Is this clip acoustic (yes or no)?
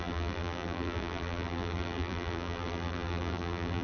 no